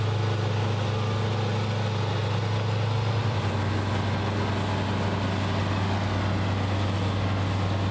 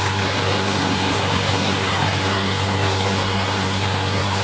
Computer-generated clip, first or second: second